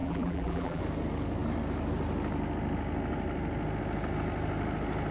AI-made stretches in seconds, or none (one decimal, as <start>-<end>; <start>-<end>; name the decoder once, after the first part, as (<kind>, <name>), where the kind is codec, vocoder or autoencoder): 0.0-0.8 (vocoder, BigVGAN v2)